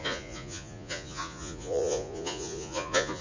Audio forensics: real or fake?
fake